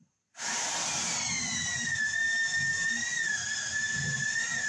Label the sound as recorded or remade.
recorded